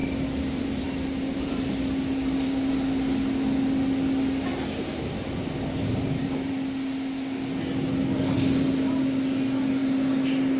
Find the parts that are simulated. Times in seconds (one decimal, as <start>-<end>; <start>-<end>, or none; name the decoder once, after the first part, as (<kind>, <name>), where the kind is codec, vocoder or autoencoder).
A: 0.0-2.7 (vocoder, BigVGAN v2); 4.5-6.5